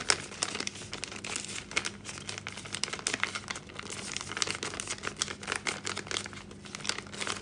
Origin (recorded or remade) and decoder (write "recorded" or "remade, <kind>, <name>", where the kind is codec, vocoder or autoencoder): recorded